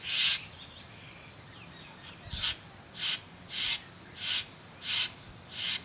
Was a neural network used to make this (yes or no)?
no